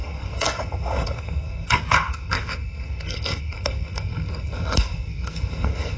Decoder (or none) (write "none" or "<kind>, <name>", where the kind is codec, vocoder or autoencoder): codec, SNAC